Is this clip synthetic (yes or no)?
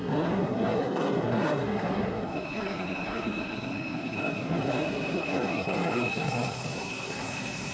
yes